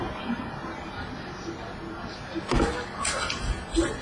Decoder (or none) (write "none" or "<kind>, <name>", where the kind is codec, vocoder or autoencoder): none